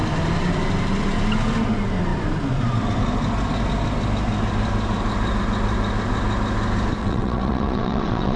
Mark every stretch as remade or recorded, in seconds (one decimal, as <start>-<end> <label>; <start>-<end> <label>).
0.0-7.0 recorded; 7.0-8.4 remade